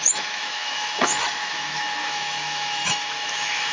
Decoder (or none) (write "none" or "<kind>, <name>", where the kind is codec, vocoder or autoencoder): autoencoder, DAC-VAE